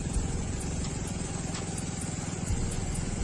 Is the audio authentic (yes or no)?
no